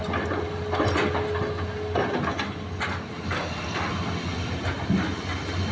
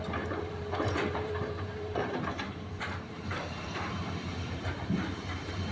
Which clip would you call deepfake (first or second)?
second